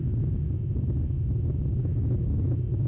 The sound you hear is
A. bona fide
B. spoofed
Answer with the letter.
A